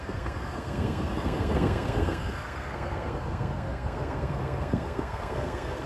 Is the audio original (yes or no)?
no